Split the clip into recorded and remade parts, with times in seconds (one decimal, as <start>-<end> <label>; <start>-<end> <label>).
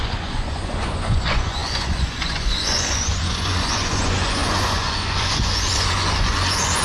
0.0-6.8 remade